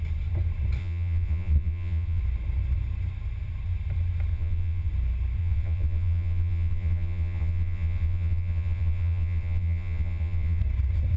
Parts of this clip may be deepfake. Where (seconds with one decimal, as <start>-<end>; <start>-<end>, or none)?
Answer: 0.8-2.2; 4.3-4.9; 5.4-10.6